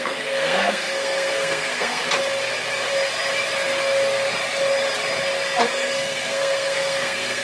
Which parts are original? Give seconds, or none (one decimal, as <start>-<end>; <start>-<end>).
2.0-5.7